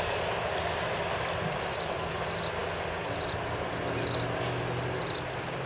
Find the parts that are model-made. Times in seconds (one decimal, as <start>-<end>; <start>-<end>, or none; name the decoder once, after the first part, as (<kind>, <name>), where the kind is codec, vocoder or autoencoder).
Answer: none